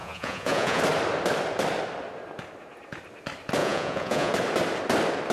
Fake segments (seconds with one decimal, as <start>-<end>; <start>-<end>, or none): 0.0-0.8; 3.6-4.3